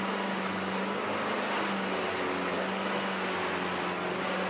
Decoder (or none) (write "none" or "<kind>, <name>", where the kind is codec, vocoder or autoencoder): none